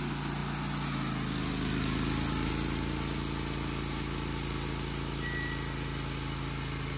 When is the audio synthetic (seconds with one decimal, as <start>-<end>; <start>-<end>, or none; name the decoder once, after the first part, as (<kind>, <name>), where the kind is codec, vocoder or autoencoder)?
none